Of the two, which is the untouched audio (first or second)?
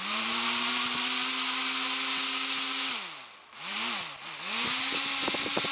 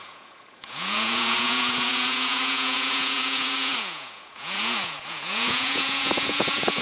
first